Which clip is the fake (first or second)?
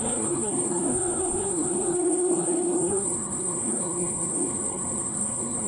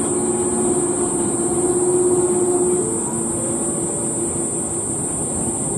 first